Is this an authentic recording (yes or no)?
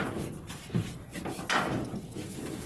yes